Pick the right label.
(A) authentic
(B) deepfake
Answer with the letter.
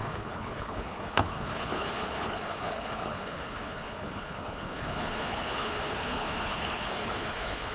B